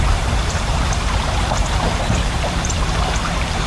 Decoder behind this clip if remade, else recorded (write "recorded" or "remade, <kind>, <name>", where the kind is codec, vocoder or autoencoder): remade, vocoder, BigVGAN v2